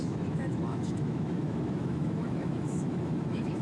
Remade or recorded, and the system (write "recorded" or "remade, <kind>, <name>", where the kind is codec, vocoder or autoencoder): remade, autoencoder, DAC-VAE